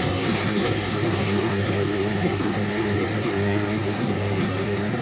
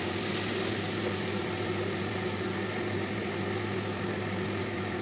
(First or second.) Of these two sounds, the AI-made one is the first